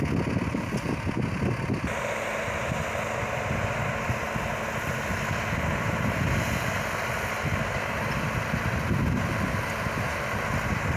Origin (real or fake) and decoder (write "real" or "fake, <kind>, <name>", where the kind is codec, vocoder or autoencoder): real